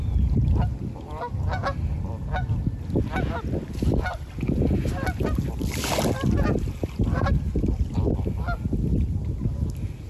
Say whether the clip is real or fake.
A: real